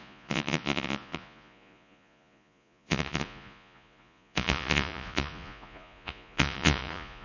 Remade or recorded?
remade